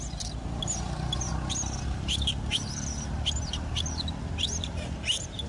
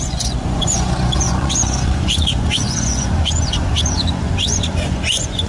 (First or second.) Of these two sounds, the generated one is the second